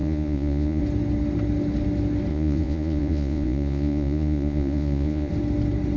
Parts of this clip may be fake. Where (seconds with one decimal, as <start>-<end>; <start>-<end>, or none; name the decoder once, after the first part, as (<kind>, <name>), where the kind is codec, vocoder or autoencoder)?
0.0-0.8 (vocoder, Vocos); 2.3-5.3